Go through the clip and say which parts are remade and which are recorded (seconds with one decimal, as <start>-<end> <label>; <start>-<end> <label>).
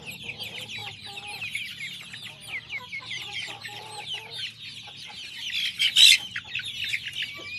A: 0.0-0.8 recorded; 0.8-1.4 remade; 1.4-2.9 recorded; 2.9-4.1 remade; 4.1-5.8 recorded; 5.8-6.4 remade; 6.4-7.6 recorded